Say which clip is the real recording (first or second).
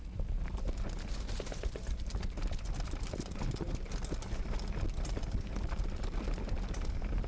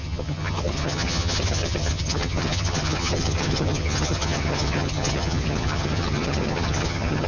first